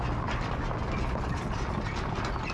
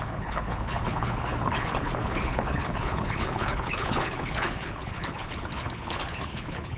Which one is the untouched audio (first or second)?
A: first